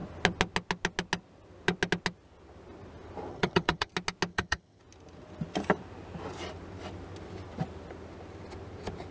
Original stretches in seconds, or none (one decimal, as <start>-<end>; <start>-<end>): 0.0-3.3; 3.9-4.3; 4.8-9.1